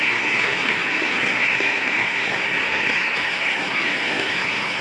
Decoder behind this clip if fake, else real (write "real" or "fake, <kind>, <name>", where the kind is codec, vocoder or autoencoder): fake, codec, SNAC